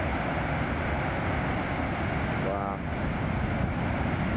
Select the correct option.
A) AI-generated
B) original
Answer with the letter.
B